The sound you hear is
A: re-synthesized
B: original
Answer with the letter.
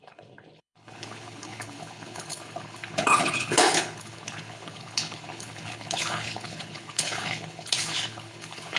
A